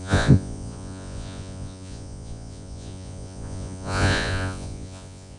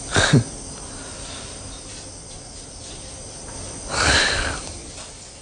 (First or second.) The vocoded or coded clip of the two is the first